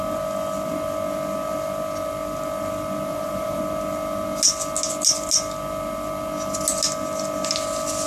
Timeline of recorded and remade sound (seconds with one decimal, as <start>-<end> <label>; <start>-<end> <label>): 0.0-3.1 recorded; 3.1-3.6 remade; 3.6-8.1 recorded